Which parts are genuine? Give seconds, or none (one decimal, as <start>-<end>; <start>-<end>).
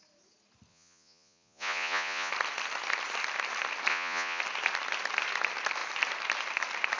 0.0-0.7; 2.3-3.9; 4.4-7.0